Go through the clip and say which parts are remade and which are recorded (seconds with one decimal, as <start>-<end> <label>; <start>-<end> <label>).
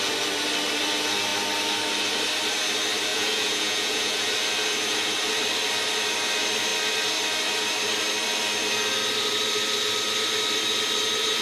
0.0-3.1 recorded; 3.1-4.3 remade; 4.3-11.4 recorded